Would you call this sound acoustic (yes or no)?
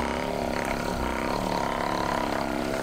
yes